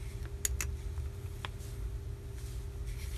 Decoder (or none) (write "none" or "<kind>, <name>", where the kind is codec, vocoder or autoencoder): none